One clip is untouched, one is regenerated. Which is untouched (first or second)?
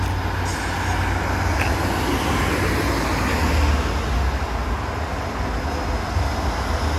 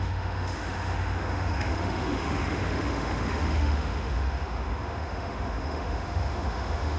first